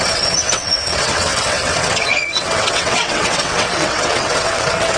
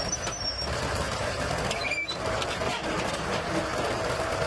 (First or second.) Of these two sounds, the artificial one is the first